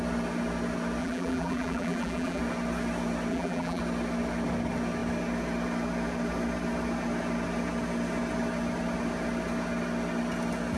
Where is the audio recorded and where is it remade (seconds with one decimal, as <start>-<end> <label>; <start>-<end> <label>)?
0.0-1.0 recorded; 1.0-2.4 remade; 2.4-3.3 recorded; 3.3-3.8 remade; 3.8-10.8 recorded